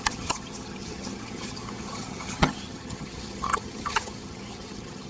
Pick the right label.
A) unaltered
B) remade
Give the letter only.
B